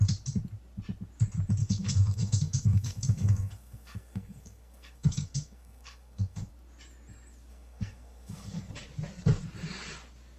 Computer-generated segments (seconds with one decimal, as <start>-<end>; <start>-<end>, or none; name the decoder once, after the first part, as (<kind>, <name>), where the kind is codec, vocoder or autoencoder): 1.6-6.5 (codec, SNAC); 7.5-8.7